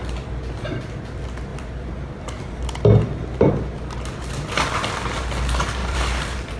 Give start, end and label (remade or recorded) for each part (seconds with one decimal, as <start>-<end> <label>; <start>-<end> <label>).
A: 0.0-5.8 recorded; 5.8-6.6 remade